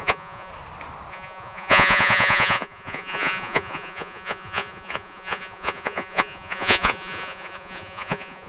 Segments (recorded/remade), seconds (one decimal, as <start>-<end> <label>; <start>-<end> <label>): 0.0-0.5 remade; 0.5-1.1 recorded; 1.1-8.5 remade